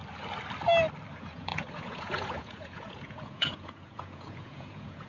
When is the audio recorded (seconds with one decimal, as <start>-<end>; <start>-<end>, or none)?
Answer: 0.0-1.1